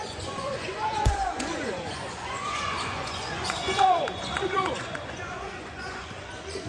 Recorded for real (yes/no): no